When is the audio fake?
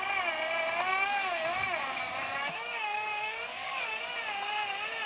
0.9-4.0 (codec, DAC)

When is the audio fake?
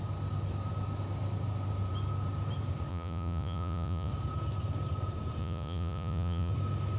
2.9-4.1 (vocoder, Vocos); 5.4-6.5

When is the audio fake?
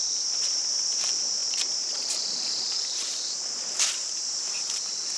0.0-5.2 (vocoder, BigVGAN v2)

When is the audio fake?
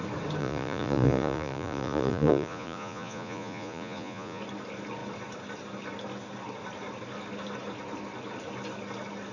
0.4-4.4 (vocoder, Vocos)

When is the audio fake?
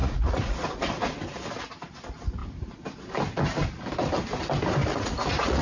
0.0-0.9 (vocoder, Vocos); 4.8-5.6